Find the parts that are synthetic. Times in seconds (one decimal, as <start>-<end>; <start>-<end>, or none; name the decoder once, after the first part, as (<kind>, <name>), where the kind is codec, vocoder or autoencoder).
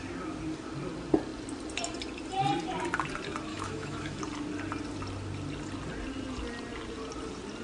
3.5-4.2 (autoencoder, DAC-VAE)